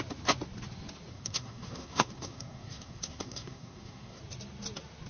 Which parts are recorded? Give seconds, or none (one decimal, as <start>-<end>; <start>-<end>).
0.0-1.1; 4.2-5.1